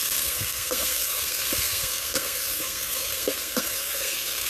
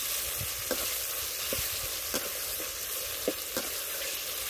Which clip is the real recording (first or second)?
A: second